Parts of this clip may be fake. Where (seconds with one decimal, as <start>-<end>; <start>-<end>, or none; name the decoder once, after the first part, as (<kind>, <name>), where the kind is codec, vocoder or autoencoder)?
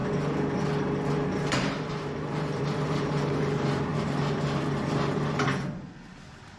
1.5-6.6 (vocoder, BigVGAN v2)